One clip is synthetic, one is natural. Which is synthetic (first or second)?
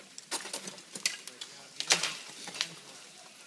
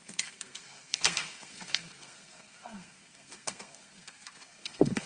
second